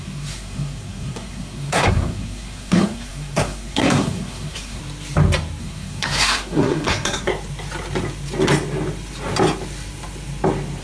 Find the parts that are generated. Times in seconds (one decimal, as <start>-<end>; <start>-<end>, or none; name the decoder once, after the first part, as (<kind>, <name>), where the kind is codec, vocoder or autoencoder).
0.0-4.8 (codec, SNAC); 5.6-7.3